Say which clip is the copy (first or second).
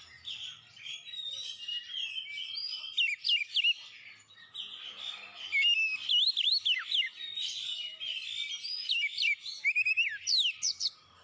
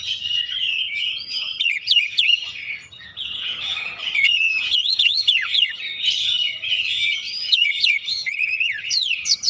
second